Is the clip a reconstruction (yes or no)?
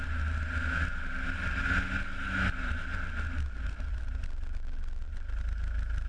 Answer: no